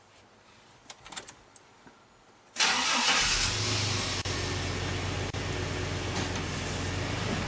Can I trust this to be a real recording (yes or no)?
yes